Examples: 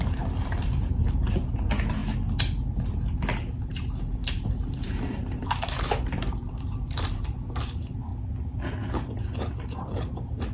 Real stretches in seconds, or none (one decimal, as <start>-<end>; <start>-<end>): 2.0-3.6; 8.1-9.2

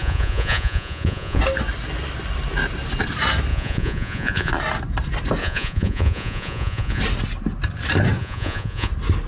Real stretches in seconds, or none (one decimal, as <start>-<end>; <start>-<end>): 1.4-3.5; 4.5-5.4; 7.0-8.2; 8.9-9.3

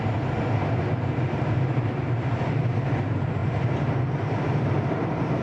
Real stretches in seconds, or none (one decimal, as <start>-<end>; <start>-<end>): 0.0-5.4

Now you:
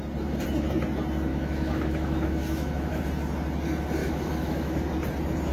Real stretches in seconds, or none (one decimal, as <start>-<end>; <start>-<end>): 0.0-1.3; 3.0-4.0; 4.8-5.5